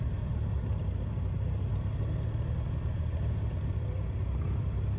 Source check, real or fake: real